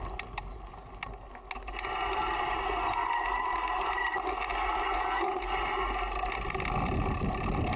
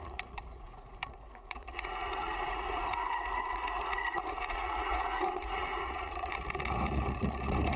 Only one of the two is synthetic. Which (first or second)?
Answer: second